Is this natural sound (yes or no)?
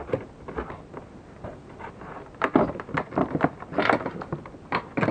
yes